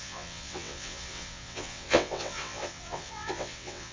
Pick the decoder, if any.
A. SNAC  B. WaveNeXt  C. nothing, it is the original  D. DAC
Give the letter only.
B